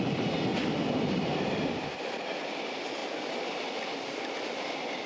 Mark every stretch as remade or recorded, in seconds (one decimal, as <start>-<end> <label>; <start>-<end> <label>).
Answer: 0.0-0.5 remade; 0.5-1.9 recorded; 1.9-5.1 remade